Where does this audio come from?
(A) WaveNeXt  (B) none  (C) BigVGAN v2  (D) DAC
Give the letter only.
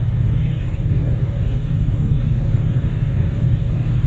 D